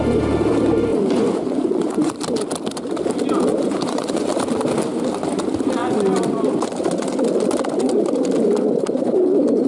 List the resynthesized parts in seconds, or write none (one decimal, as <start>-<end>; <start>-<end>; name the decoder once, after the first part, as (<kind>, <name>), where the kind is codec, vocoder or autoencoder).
0.9-2.1 (vocoder, Vocos); 3.5-4.3

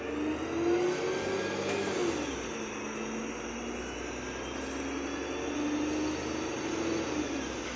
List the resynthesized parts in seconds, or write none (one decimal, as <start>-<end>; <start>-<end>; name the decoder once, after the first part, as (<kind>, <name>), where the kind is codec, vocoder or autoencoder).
none

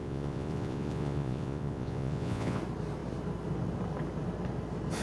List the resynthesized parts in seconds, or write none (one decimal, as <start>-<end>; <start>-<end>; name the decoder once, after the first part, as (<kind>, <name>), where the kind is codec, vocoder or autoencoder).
0.0-2.6 (vocoder, Vocos)

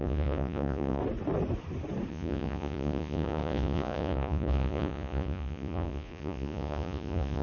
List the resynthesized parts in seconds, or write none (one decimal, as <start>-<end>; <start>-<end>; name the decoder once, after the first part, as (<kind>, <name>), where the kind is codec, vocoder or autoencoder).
0.0-1.0 (vocoder, Vocos); 2.1-7.4

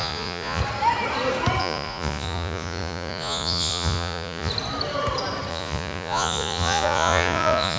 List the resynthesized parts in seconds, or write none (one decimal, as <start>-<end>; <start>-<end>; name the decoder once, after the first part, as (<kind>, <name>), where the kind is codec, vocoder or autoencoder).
0.0-0.6 (vocoder, Vocos); 1.6-4.5; 5.5-7.8

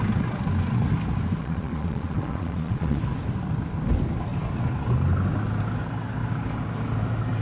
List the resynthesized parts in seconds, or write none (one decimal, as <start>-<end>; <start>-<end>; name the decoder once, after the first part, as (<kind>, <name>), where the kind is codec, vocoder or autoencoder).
1.4-3.0 (vocoder, Vocos)

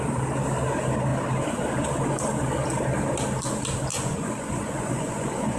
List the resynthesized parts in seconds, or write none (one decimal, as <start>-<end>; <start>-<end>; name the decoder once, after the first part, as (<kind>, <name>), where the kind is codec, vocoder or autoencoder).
3.9-5.6 (vocoder, Vocos)

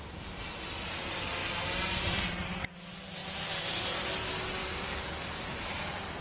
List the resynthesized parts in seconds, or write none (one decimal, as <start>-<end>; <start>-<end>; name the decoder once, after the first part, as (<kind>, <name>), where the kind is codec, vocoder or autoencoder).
none